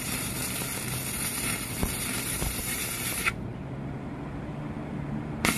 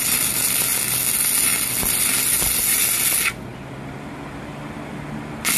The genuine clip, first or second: second